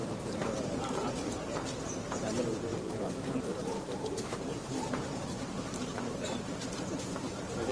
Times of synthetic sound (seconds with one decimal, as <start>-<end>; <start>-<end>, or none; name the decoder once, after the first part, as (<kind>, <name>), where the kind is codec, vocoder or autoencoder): 0.0-2.7 (vocoder, BigVGAN v2); 3.5-7.7

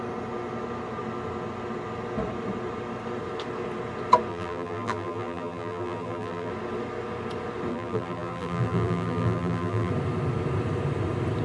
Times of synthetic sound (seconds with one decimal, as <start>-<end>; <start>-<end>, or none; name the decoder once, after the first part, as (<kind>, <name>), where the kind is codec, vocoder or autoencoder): 4.3-6.5 (vocoder, BigVGAN v2); 7.7-9.9

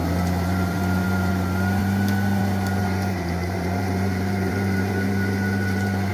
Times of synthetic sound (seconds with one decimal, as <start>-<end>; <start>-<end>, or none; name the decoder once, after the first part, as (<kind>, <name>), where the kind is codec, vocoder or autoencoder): 0.0-1.3 (vocoder, BigVGAN v2); 2.8-6.1

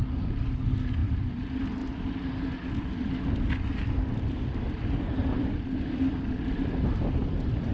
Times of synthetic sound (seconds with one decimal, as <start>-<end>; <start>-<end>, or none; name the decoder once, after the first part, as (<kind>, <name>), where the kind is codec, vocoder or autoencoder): 1.0-1.6 (vocoder, BigVGAN v2); 5.2-5.7

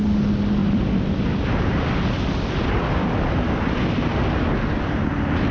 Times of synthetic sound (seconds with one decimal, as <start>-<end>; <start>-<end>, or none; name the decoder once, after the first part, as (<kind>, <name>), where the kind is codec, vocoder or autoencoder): 0.6-1.1 (vocoder, BigVGAN v2); 1.7-3.8

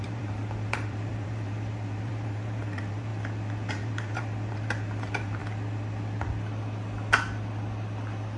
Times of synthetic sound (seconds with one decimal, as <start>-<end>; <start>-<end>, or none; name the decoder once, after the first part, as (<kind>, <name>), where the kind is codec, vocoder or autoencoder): 0.0-3.1 (vocoder, BigVGAN v2); 3.7-5.4

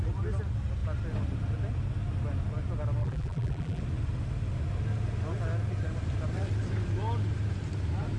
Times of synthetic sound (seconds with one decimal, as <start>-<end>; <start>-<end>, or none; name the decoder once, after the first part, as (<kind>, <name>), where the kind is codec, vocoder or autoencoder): 3.0-3.8 (vocoder, BigVGAN v2)

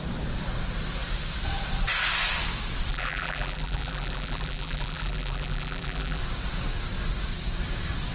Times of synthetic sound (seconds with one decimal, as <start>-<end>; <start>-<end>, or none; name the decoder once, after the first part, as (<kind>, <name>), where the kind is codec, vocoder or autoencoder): 2.9-6.2 (vocoder, BigVGAN v2)